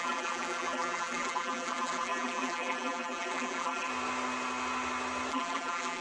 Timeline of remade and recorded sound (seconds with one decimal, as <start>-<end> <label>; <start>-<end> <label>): 0.0-3.9 remade; 3.9-5.3 recorded; 5.3-6.0 remade